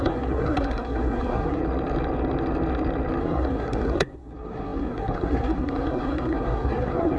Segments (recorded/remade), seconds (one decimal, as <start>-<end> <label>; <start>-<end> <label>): 0.0-1.6 remade; 1.6-3.2 recorded; 3.2-7.2 remade